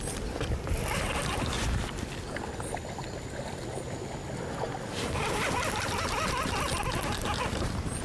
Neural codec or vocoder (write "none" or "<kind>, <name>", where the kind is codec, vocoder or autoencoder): none